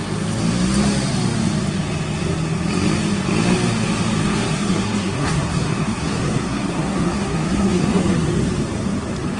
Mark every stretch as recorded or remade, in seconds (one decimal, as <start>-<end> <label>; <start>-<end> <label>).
0.0-4.3 recorded; 4.3-8.3 remade; 8.3-9.4 recorded